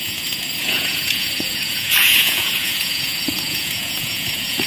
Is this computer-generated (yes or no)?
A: yes